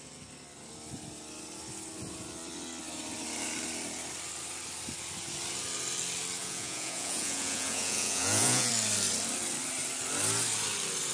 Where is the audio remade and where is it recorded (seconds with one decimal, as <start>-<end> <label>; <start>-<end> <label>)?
0.0-6.4 recorded; 6.4-8.7 remade; 8.7-11.1 recorded

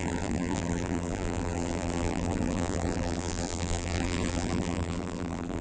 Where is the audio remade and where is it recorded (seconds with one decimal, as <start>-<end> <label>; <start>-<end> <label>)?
0.0-5.6 remade

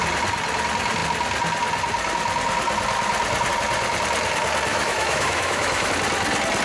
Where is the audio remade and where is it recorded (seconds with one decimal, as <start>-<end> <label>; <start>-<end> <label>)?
0.0-4.7 recorded; 4.7-5.9 remade; 5.9-6.6 recorded

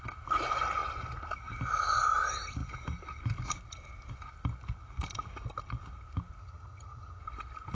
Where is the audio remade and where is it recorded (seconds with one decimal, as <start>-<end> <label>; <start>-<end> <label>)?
0.0-6.4 recorded; 6.4-7.2 remade; 7.2-7.7 recorded

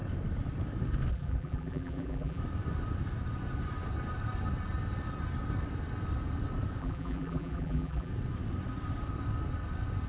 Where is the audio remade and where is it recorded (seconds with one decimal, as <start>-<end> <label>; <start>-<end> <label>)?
0.0-1.1 recorded; 1.1-2.4 remade; 2.4-6.8 recorded; 6.8-8.1 remade; 8.1-10.1 recorded

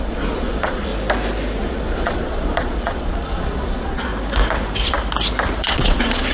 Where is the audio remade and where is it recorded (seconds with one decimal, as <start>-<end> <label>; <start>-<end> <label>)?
0.0-0.9 remade; 0.9-1.6 recorded; 1.6-4.1 remade; 4.1-5.6 recorded; 5.6-6.3 remade